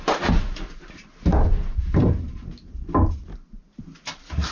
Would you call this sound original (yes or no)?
yes